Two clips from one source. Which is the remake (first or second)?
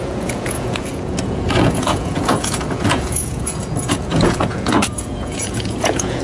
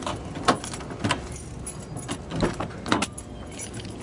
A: first